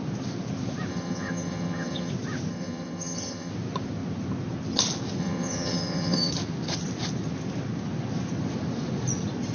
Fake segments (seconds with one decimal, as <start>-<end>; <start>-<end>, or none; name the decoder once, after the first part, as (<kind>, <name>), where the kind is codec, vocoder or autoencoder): 0.9-2.1 (vocoder, HiFi-GAN); 2.5-3.5; 5.2-6.3